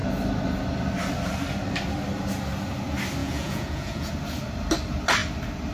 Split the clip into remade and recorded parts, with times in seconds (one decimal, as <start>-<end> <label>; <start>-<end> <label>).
0.0-3.2 recorded; 3.2-4.1 remade; 4.1-5.7 recorded